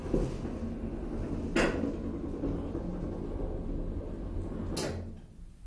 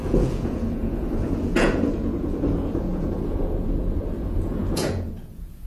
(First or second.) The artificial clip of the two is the second